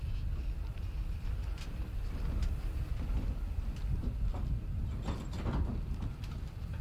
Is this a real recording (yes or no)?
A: yes